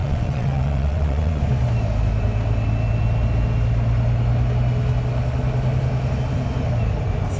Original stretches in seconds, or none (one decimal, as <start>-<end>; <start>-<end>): 1.4-7.4